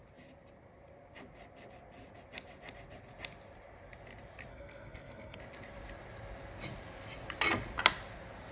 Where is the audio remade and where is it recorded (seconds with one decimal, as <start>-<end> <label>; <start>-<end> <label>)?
0.0-4.5 recorded; 4.5-5.4 remade; 5.4-8.5 recorded